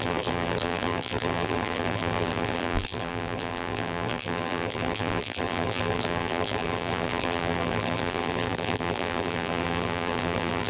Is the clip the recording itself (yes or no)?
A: no